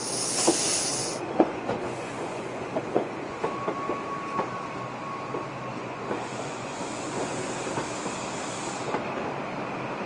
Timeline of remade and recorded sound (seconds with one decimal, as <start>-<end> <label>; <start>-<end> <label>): 0.0-1.0 recorded; 1.0-3.4 remade; 3.4-5.7 recorded; 5.7-7.6 remade; 7.6-10.1 recorded